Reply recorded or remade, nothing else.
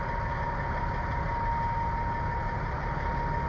recorded